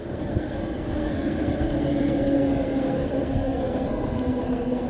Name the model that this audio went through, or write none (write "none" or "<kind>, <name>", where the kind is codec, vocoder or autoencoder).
codec, SNAC